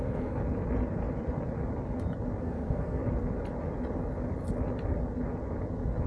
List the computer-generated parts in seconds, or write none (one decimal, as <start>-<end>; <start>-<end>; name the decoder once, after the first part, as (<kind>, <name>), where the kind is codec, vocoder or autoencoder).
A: 0.0-0.4 (codec, SNAC); 2.4-3.0